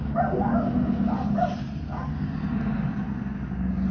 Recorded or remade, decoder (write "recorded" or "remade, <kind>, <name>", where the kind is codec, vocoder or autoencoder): recorded